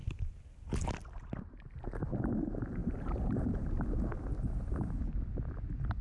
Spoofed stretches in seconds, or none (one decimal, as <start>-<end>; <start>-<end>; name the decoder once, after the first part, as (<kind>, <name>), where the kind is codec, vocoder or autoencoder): 2.8-3.4 (vocoder, BigVGAN v2)